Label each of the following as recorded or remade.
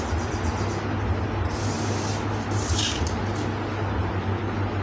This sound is recorded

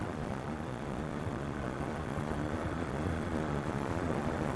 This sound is remade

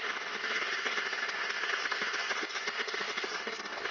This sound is remade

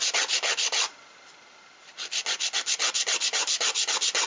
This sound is recorded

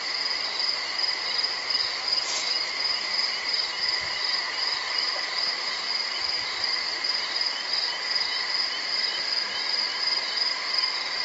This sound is recorded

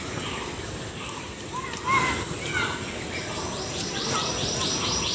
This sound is recorded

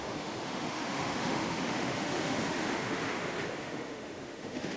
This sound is remade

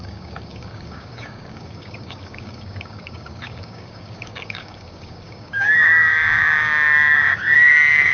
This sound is remade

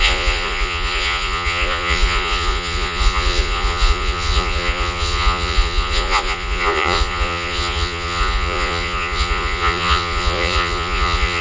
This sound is remade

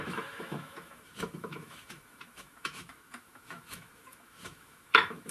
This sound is remade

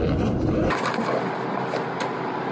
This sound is recorded